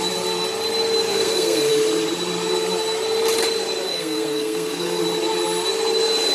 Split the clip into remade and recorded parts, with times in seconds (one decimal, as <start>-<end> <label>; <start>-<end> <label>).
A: 0.0-1.1 recorded; 1.1-1.7 remade; 1.7-3.9 recorded; 3.9-5.0 remade; 5.0-6.3 recorded